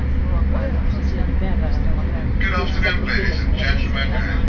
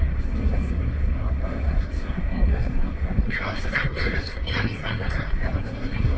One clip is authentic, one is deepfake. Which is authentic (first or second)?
first